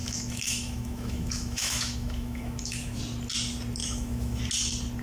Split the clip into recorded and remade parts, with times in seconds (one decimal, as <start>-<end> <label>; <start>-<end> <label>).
0.0-3.0 remade; 3.0-3.8 recorded; 3.8-4.4 remade; 4.4-5.0 recorded